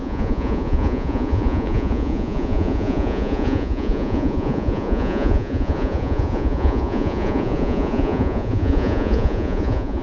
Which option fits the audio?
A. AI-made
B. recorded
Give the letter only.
A